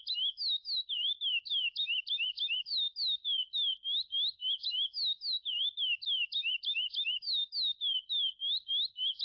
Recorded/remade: recorded